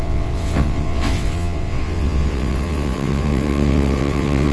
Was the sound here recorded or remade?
remade